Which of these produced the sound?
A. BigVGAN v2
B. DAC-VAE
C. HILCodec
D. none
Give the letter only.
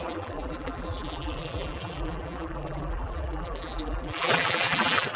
A